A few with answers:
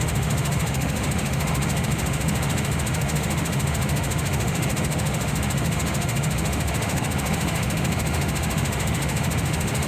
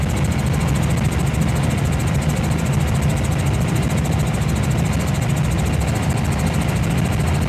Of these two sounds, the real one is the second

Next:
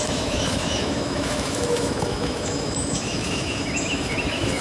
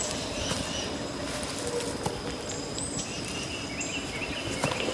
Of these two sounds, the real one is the second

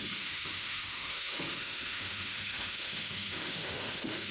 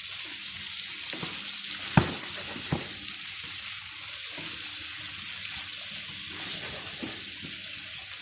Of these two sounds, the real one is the second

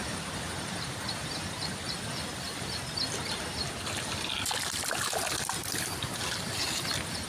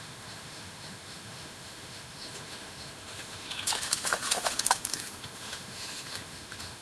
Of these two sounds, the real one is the first